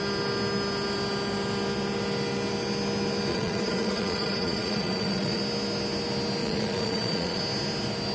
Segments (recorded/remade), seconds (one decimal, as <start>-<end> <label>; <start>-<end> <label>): 0.0-3.3 recorded; 3.3-5.4 remade; 5.4-6.4 recorded; 6.4-7.4 remade; 7.4-8.1 recorded